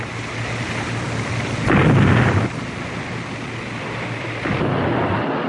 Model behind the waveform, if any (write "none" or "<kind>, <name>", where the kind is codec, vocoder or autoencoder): none